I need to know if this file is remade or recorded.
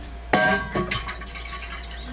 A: recorded